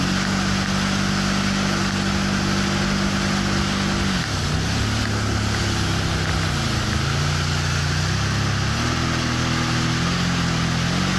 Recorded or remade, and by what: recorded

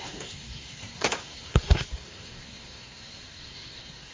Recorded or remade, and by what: remade, codec, SNAC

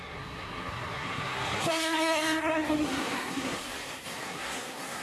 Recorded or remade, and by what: remade, codec, SNAC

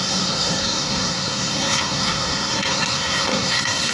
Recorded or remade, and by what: remade, codec, SNAC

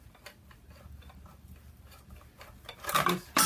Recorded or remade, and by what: recorded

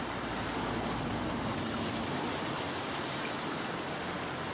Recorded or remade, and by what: recorded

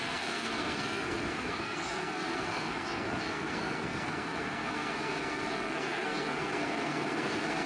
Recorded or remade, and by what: remade, codec, SNAC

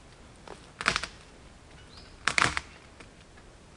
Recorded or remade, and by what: recorded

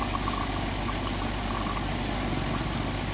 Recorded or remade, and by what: recorded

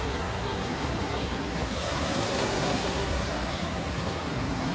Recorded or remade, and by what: remade, codec, SNAC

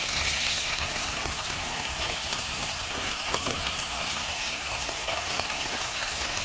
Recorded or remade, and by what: remade, codec, SNAC